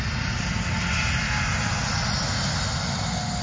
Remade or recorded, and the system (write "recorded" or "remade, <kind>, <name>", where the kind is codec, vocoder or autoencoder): recorded